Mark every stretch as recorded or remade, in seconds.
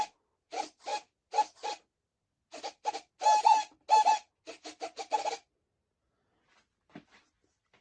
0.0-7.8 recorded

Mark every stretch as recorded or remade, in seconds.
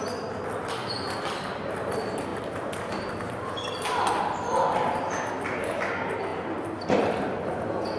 0.0-8.0 recorded